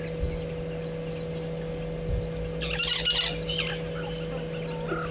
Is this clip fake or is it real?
real